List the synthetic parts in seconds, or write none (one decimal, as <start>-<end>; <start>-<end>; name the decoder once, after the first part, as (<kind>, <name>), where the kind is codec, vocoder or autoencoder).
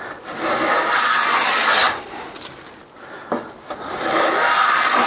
none